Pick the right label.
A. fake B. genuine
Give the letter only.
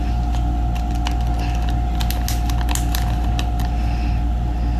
B